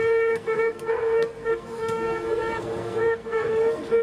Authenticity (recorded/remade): remade